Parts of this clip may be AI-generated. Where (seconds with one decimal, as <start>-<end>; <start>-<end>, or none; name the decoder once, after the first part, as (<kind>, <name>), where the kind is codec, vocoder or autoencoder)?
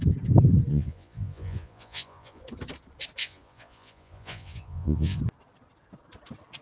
0.7-2.4 (vocoder, Vocos); 3.2-5.2